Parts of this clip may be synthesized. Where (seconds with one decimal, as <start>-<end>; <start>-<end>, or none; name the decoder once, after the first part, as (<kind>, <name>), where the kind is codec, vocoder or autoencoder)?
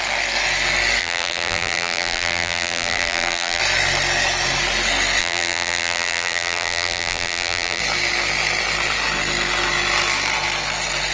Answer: 1.0-3.6 (vocoder, BigVGAN v2); 5.2-7.8